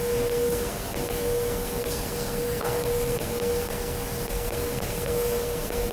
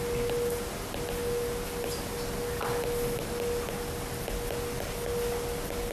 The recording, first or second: second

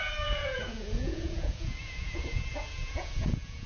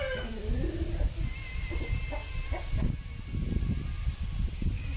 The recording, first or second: second